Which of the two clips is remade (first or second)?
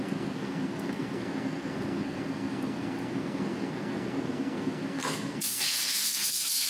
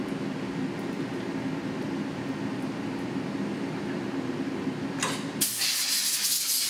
first